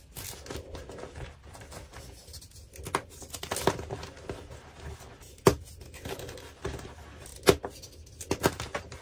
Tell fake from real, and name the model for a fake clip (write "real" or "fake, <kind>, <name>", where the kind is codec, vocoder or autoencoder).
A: real